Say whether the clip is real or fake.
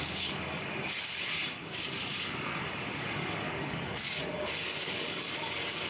fake